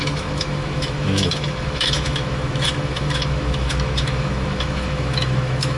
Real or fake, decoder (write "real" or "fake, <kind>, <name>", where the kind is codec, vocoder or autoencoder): fake, autoencoder, DAC-VAE